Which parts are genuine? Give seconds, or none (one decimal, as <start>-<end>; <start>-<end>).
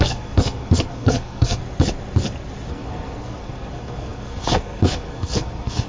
1.6-2.7